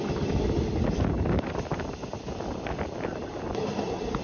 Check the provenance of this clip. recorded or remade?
recorded